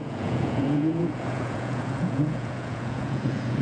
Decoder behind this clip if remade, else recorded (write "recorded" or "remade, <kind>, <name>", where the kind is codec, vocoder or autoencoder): remade, vocoder, Vocos